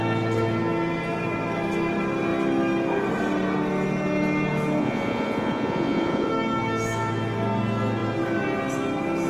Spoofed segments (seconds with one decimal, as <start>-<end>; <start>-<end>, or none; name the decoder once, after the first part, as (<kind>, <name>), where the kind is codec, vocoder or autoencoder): 4.8-6.3 (vocoder, Vocos)